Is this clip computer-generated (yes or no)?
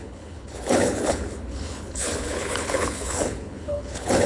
yes